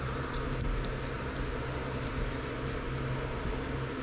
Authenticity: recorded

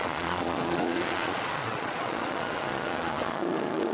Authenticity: remade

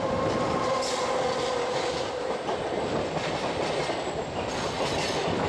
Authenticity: recorded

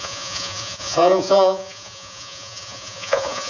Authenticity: remade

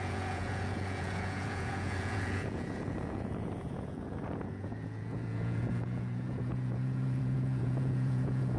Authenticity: remade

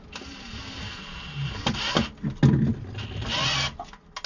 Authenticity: recorded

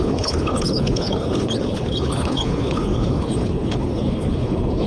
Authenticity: remade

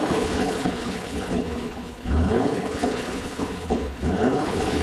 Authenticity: remade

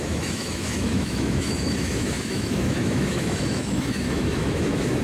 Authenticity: remade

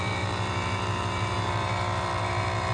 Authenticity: remade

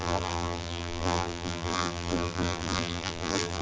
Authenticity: remade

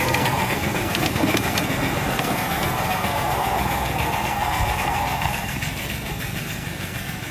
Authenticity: remade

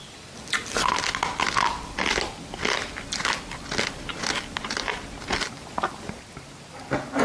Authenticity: recorded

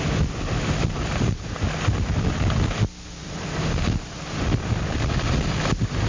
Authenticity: recorded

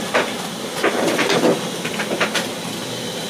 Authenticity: recorded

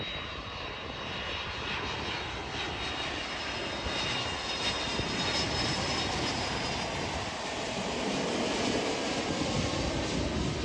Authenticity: recorded